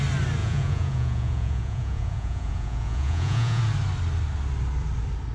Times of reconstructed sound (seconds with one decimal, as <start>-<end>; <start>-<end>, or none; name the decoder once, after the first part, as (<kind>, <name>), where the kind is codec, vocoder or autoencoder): 0.4-3.6 (vocoder, Vocos)